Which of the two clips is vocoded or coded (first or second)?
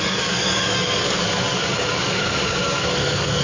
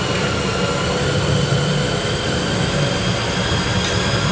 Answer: first